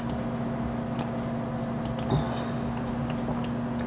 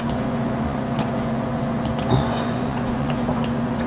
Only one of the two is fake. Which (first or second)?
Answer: second